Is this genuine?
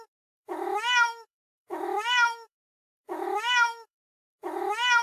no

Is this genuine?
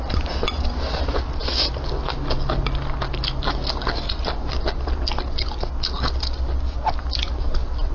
yes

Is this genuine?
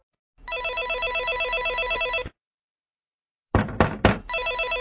yes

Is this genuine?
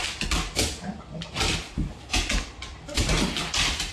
yes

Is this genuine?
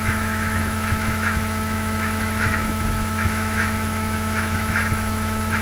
no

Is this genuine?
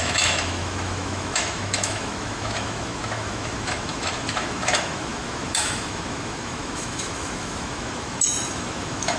no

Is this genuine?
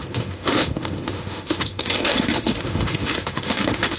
no